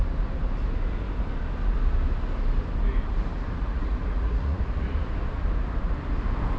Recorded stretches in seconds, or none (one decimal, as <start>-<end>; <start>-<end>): 0.0-3.6; 4.6-6.6